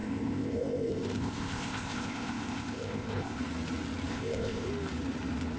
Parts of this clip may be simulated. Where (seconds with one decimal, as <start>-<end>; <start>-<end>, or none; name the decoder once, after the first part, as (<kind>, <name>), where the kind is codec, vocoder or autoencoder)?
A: 0.0-3.4 (codec, ZipCodec); 4.1-4.7